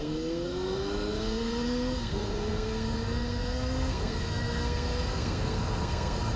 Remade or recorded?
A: remade